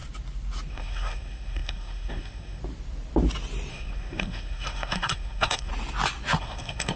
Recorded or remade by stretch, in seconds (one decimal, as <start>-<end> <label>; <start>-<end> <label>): 0.0-0.7 recorded; 0.7-2.6 remade; 2.6-3.7 recorded; 3.7-5.7 remade; 5.7-6.4 recorded; 6.4-7.0 remade